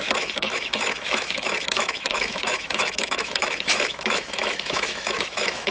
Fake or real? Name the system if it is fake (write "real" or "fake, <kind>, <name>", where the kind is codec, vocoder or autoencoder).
fake, autoencoder, DAC-VAE